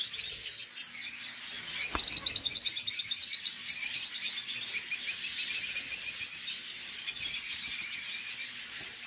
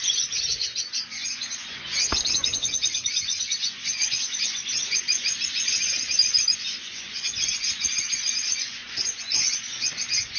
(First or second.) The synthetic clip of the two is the second